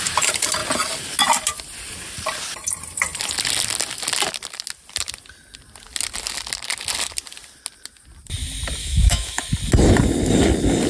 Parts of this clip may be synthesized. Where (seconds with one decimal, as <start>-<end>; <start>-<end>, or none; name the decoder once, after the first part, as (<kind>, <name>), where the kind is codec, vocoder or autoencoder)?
8.8-9.4 (autoencoder, DAC-VAE)